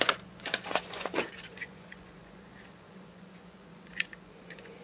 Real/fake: fake